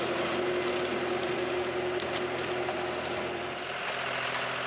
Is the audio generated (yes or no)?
no